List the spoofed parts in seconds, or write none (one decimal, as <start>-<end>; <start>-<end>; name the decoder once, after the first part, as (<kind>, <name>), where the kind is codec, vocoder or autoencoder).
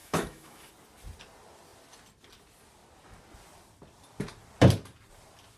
0.0-0.7 (autoencoder, DAC-VAE)